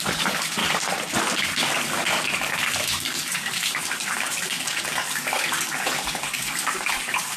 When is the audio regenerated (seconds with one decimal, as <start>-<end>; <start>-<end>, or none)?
0.0-0.6; 1.2-7.4